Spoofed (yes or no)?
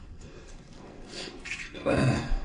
yes